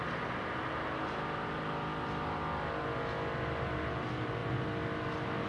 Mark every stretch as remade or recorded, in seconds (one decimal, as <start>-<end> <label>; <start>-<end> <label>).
0.0-5.5 recorded